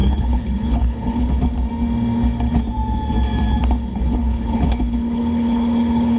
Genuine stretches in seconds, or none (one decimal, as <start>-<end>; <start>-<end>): 1.4-3.9